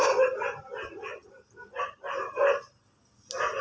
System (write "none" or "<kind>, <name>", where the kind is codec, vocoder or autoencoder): none